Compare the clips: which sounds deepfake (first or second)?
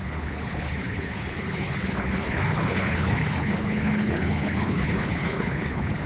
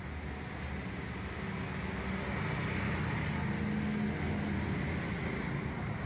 first